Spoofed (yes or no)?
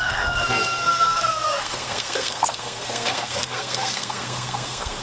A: yes